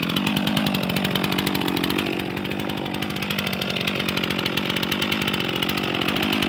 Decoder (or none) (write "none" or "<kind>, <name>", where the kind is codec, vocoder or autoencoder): none